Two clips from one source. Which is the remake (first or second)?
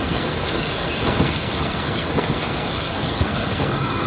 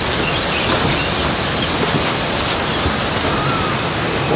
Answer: first